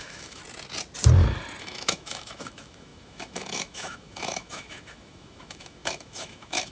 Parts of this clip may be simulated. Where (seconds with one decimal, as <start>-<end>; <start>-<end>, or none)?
0.0-0.4; 1.6-6.7